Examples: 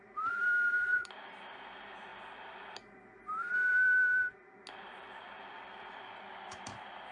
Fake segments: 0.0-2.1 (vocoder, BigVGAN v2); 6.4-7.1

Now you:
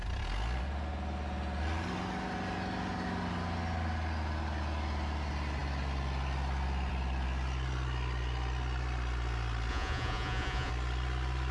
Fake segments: 9.7-10.7 (vocoder, Vocos)

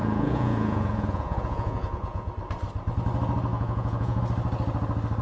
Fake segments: 0.0-2.3 (vocoder, Vocos); 3.5-4.2

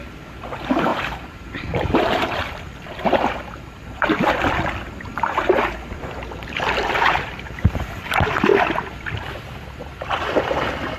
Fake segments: 0.9-4.4 (vocoder, BigVGAN v2); 5.1-8.1